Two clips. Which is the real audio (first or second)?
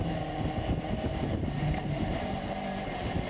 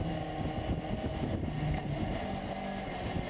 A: second